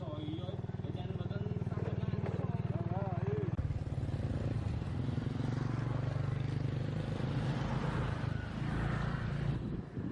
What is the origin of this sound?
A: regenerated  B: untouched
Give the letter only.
B